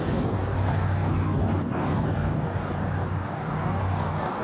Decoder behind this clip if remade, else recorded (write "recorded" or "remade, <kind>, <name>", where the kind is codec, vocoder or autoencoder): remade, codec, DAC